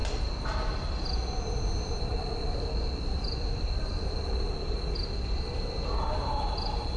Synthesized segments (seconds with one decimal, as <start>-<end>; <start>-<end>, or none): 0.0-1.2; 1.7-2.1; 3.0-4.5; 5.7-7.0